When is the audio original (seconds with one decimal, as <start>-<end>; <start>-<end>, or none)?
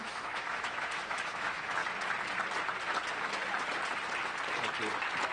1.8-5.3